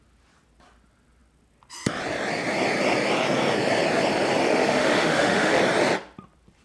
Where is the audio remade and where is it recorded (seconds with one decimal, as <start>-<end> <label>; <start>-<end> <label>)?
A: 0.0-4.4 recorded; 4.4-5.6 remade; 5.6-6.6 recorded